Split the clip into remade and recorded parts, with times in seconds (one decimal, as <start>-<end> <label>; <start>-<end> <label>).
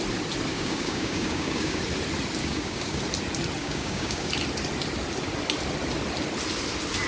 0.0-0.5 recorded; 0.5-1.8 remade; 1.8-2.4 recorded; 2.4-3.0 remade; 3.0-3.6 recorded; 3.6-4.3 remade; 4.3-7.1 recorded